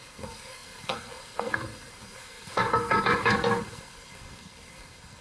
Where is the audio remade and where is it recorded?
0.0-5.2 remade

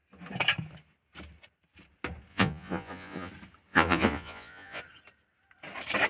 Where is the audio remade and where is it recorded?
0.0-2.3 recorded; 2.3-3.3 remade; 3.3-3.7 recorded; 3.7-4.8 remade; 4.8-6.1 recorded

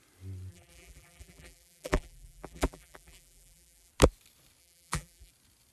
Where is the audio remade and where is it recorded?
0.0-0.5 recorded; 0.5-3.9 remade; 3.9-4.6 recorded; 4.6-5.3 remade; 5.3-5.7 recorded